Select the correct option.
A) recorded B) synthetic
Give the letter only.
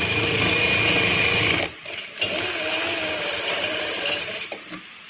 A